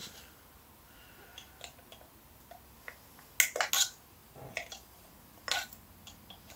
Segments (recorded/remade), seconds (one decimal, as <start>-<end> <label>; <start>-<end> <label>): 0.0-4.2 recorded; 4.2-5.1 remade; 5.1-6.6 recorded